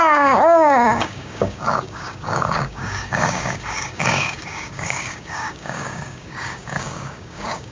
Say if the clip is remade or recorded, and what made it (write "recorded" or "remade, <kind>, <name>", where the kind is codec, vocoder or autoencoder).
remade, codec, DAC